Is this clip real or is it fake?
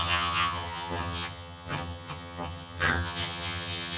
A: fake